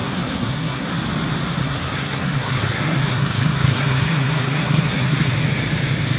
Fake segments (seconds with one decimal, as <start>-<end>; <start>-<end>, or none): 0.0-0.9; 1.6-5.3